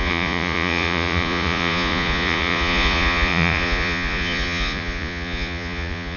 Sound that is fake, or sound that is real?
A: fake